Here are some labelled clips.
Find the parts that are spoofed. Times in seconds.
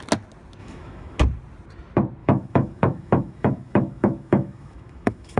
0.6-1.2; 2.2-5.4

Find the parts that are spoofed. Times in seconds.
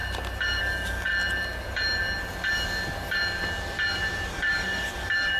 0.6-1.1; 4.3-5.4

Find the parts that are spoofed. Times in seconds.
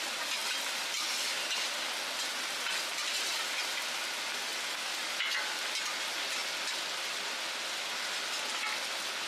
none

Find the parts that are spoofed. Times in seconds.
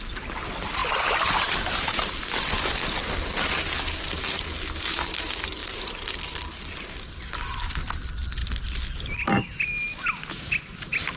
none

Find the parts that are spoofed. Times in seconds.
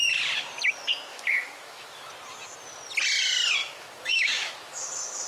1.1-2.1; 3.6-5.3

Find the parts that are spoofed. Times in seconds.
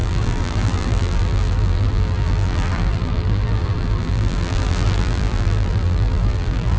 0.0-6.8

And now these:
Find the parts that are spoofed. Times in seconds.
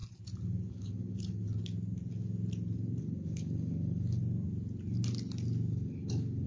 0.7-1.4; 3.0-4.2; 5.7-6.5